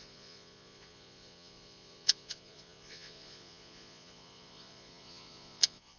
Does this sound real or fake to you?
fake